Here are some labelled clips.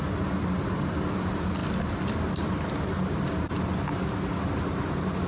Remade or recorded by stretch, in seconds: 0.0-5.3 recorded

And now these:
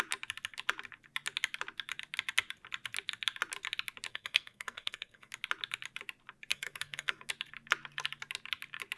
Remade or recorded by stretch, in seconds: 0.0-4.1 recorded; 4.1-5.3 remade; 5.3-6.5 recorded; 6.5-7.3 remade; 7.3-9.0 recorded